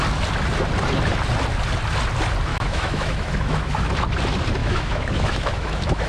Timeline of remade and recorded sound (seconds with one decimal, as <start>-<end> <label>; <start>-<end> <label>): 0.0-2.5 recorded; 2.5-3.9 remade; 3.9-4.6 recorded; 4.6-6.1 remade